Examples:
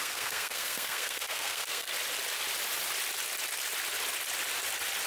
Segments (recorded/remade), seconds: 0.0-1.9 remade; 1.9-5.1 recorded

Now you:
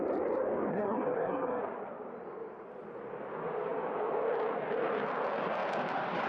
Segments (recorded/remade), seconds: 0.0-0.7 recorded; 0.7-1.6 remade; 1.6-6.3 recorded

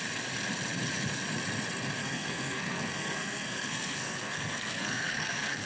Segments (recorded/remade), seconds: 0.0-2.0 recorded; 2.0-5.7 remade

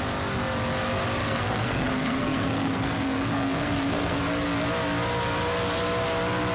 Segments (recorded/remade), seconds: 0.0-1.2 recorded; 1.2-4.2 remade; 4.2-6.5 recorded

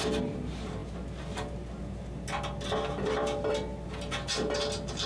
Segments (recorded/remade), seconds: 0.0-5.1 recorded